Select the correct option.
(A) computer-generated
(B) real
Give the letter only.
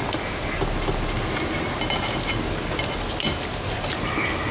B